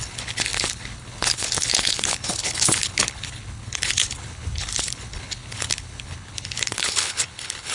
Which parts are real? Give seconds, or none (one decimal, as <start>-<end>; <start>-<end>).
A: none

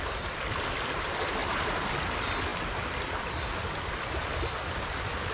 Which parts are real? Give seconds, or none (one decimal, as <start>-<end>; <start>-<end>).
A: 0.0-1.4; 1.9-5.3

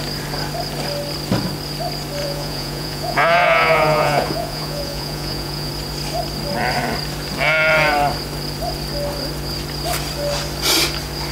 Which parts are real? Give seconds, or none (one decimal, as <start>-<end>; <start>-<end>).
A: 0.0-2.2; 5.7-11.3

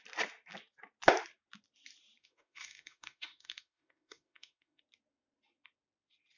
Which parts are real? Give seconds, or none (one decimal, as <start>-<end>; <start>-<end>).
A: 0.0-2.2; 4.8-6.4

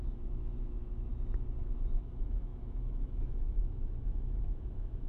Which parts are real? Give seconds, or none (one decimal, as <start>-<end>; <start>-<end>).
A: 1.1-1.6

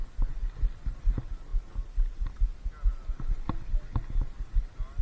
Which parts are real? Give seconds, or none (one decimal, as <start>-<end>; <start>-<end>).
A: 0.0-5.0

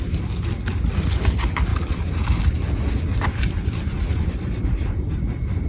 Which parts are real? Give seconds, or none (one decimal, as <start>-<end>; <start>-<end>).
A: 0.0-1.7; 2.4-3.1; 5.1-5.7

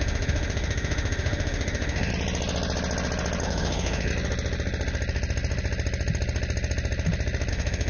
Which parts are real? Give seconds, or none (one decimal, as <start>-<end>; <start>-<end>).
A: 2.1-3.4; 4.1-7.5